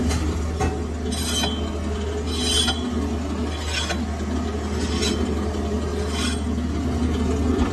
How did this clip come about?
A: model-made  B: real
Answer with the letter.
B